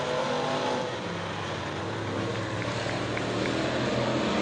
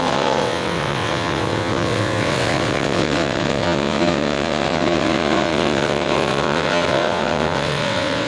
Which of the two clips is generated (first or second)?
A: second